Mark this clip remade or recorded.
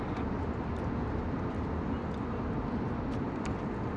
recorded